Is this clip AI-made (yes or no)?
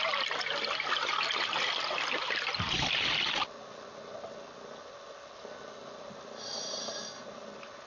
no